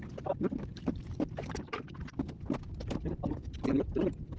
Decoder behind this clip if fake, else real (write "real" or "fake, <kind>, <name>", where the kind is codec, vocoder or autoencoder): real